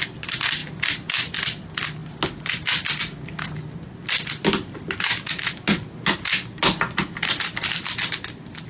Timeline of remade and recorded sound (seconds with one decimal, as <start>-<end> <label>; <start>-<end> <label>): 0.0-8.7 recorded